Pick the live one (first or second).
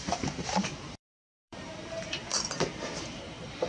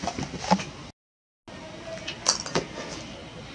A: second